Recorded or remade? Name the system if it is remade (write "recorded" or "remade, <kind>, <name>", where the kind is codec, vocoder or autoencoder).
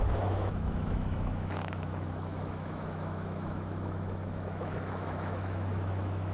remade, autoencoder, DAC-VAE